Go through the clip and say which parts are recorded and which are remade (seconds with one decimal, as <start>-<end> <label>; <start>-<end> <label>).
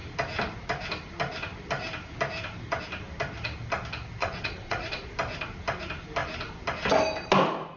0.0-4.2 recorded; 4.2-5.1 remade; 5.1-7.8 recorded